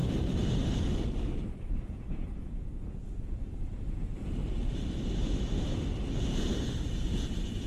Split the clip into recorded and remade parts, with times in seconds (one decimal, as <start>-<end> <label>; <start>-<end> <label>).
0.0-1.4 recorded; 1.4-4.4 remade; 4.4-7.0 recorded; 7.0-7.7 remade

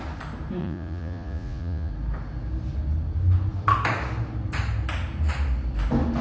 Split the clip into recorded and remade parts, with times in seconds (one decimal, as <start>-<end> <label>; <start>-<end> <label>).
0.0-0.6 recorded; 0.6-1.9 remade; 1.9-6.2 recorded

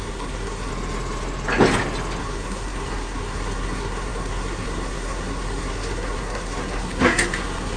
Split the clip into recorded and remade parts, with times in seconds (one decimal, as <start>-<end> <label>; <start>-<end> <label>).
0.0-0.7 remade; 0.7-2.2 recorded; 2.2-7.8 remade

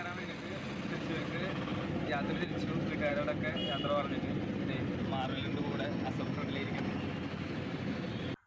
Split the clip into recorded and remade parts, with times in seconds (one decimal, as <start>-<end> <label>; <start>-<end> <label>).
0.0-8.5 recorded

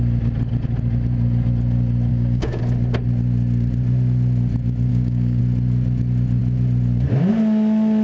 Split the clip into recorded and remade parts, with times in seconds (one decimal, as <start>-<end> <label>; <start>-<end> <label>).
0.0-2.1 recorded; 2.1-2.6 remade; 2.6-4.9 recorded; 4.9-5.4 remade; 5.4-8.0 recorded

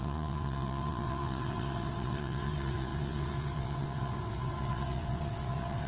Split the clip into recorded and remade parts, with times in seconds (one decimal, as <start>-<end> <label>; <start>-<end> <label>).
0.0-5.9 remade

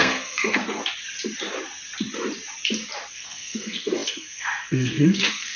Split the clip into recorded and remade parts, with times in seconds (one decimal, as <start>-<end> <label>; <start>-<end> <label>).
0.0-0.8 remade; 0.8-3.1 recorded; 3.1-5.6 remade

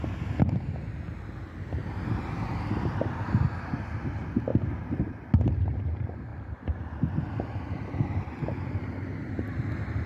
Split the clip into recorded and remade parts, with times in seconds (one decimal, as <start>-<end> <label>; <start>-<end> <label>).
0.0-1.8 recorded; 1.8-4.1 remade; 4.1-6.3 recorded; 6.3-10.1 remade